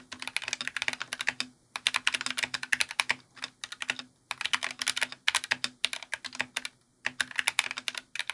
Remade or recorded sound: recorded